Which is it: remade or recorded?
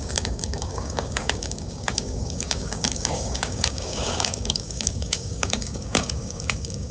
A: remade